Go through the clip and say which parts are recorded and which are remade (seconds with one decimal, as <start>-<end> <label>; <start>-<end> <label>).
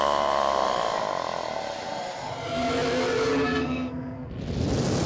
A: 0.0-3.5 recorded; 3.5-4.4 remade; 4.4-5.1 recorded